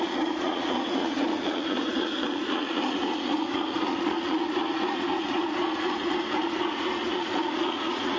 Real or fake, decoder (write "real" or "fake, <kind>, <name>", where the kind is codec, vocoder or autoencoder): fake, vocoder, Vocos